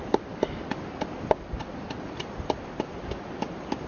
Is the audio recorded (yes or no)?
yes